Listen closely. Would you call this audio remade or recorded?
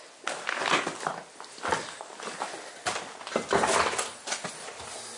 recorded